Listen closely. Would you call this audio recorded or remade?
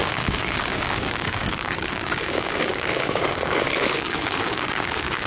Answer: remade